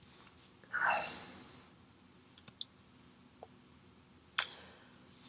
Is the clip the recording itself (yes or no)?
yes